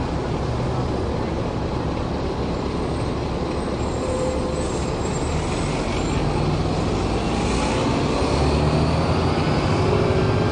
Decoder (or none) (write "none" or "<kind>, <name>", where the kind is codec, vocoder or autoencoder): none